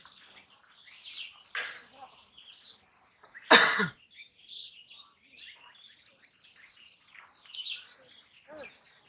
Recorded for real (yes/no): yes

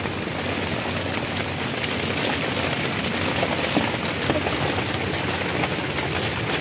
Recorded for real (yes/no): yes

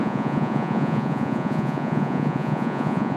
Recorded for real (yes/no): no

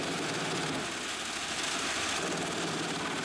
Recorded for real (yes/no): yes